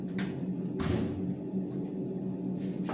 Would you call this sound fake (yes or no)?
no